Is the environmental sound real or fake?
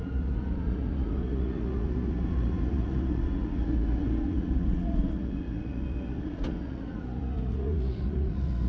fake